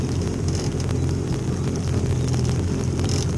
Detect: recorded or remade recorded